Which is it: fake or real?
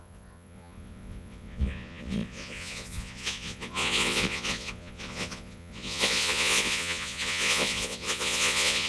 fake